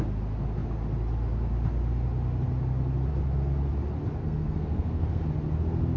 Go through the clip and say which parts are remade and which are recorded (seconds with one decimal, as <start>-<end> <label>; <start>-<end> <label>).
0.0-4.2 recorded; 4.2-5.2 remade; 5.2-6.0 recorded